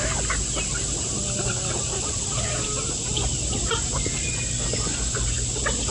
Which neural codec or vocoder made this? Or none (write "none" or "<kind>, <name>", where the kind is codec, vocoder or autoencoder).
none